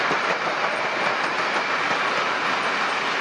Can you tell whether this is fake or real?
real